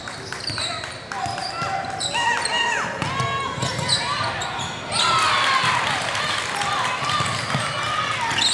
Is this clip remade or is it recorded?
recorded